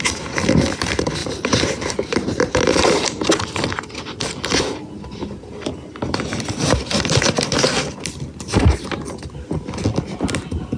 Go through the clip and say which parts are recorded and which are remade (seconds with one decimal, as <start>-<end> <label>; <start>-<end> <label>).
0.0-1.2 recorded; 1.2-3.4 remade; 3.4-10.8 recorded